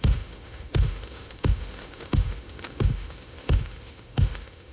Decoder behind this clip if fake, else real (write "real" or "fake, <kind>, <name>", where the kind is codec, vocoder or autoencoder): fake, autoencoder, DAC-VAE